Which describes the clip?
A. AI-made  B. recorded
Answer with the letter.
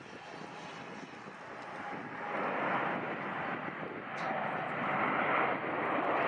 B